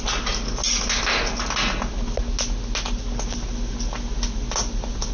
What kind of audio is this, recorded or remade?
recorded